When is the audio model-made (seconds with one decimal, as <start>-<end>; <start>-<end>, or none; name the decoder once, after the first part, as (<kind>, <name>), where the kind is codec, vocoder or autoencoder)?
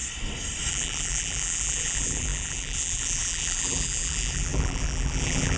0.7-5.6 (vocoder, BigVGAN v2)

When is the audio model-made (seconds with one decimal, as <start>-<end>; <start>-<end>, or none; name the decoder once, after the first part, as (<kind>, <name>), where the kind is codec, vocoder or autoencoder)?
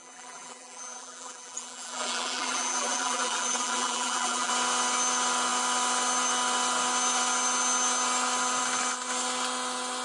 0.0-4.5 (vocoder, BigVGAN v2)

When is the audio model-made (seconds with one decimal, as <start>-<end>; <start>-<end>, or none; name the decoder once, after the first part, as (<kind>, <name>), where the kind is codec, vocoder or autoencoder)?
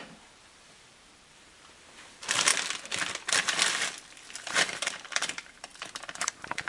0.0-2.5 (vocoder, BigVGAN v2); 4.5-6.7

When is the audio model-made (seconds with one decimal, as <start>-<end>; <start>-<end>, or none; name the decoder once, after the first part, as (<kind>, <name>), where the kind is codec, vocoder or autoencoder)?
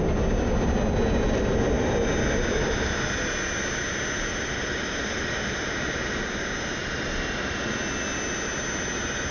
4.3-5.3 (vocoder, BigVGAN v2); 6.8-7.7